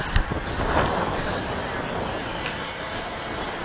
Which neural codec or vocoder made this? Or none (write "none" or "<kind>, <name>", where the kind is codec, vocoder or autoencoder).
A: none